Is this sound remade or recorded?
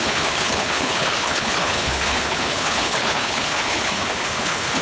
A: remade